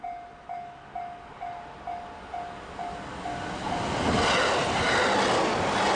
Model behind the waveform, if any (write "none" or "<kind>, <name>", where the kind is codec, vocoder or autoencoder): none